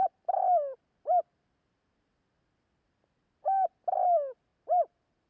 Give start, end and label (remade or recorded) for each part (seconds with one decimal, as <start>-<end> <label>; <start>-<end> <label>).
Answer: 0.0-1.2 remade; 1.2-4.5 recorded; 4.5-5.3 remade